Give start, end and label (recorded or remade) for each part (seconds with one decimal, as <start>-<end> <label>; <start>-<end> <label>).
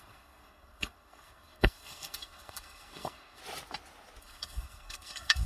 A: 0.0-3.4 remade; 3.4-4.2 recorded; 4.2-5.5 remade